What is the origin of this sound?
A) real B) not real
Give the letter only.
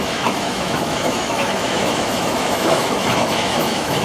B